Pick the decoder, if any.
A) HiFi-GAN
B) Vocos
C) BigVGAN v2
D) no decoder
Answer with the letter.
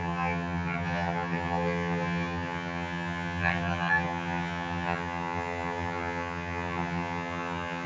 A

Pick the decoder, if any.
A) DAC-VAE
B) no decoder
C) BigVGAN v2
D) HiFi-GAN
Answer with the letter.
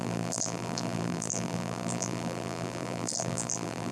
C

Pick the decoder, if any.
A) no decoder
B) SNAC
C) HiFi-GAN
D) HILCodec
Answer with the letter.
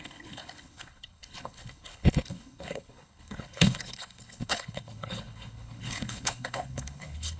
D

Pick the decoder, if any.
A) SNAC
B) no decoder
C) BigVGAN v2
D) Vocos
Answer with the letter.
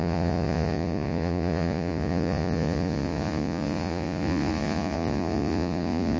D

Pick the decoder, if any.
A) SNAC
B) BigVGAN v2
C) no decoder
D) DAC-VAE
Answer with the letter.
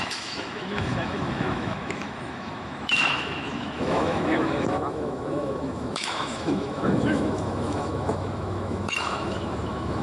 D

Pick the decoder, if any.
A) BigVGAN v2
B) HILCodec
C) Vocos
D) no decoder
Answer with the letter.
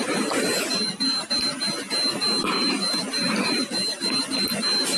D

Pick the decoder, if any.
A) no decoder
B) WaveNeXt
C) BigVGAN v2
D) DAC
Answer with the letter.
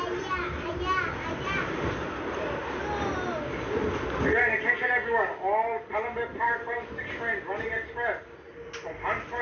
A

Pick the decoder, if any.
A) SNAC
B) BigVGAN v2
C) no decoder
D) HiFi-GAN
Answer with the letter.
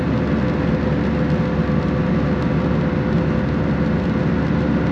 C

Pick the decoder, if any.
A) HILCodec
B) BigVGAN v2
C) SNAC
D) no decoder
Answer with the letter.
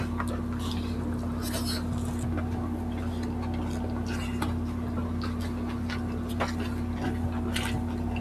D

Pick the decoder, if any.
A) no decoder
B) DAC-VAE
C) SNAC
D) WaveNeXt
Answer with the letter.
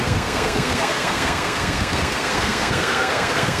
C